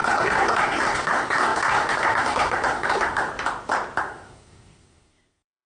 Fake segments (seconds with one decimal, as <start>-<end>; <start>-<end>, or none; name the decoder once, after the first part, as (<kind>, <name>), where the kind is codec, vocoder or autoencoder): 0.0-3.3 (codec, SNAC); 4.0-5.7